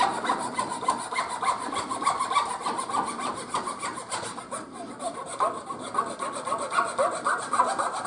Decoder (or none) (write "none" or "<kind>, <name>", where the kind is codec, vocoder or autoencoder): none